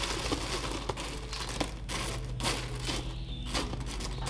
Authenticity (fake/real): real